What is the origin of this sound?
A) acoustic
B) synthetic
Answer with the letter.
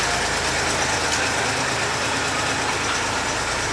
A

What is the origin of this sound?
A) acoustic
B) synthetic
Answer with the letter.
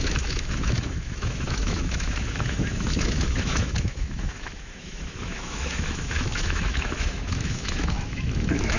B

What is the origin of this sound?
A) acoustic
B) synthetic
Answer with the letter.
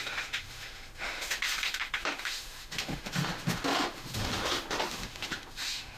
B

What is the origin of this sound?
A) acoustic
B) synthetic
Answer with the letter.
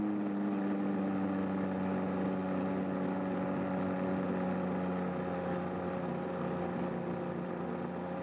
A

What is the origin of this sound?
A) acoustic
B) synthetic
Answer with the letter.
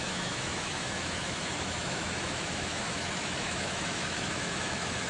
B